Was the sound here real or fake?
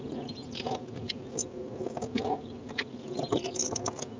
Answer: real